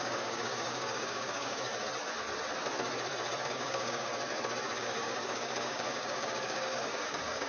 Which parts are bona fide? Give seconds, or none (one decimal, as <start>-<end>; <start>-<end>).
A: 1.7-3.5; 4.1-4.8